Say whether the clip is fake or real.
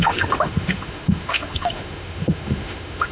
fake